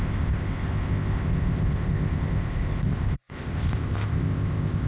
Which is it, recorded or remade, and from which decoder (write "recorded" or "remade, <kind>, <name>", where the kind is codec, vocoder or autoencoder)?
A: remade, codec, ZipCodec